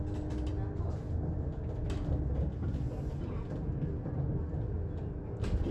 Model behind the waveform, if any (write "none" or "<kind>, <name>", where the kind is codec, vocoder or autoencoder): none